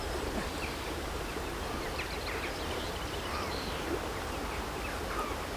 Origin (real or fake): real